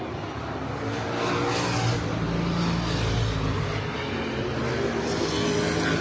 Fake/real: real